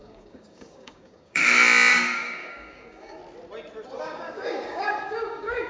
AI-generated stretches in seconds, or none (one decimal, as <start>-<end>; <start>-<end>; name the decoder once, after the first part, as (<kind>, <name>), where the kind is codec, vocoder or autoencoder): 0.0-1.4 (codec, DAC); 1.9-3.2; 4.0-5.7